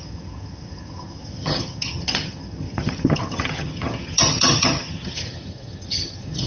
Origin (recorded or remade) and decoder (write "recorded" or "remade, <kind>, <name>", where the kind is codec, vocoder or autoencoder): remade, vocoder, HiFi-GAN